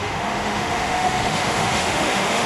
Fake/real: fake